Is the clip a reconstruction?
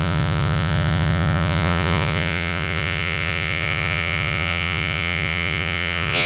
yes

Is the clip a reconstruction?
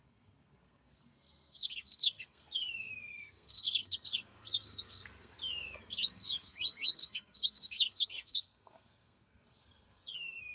yes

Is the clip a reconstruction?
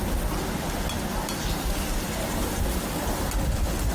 no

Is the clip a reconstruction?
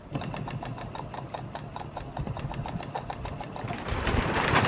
no